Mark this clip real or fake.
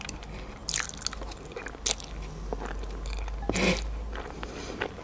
real